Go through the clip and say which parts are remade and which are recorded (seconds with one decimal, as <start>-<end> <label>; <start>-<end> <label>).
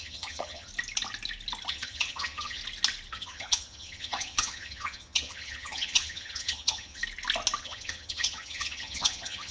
0.0-0.7 remade; 0.7-1.7 recorded; 1.7-2.6 remade; 2.6-3.1 recorded; 3.1-7.0 remade; 7.0-7.6 recorded; 7.6-9.5 remade